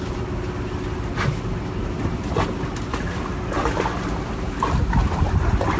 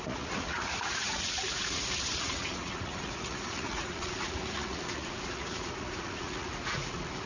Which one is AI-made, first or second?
second